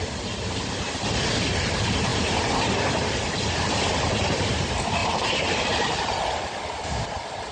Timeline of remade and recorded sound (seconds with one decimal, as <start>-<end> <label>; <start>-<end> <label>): 0.0-2.1 recorded; 2.1-2.6 remade; 2.6-5.0 recorded; 5.0-6.4 remade; 6.4-7.5 recorded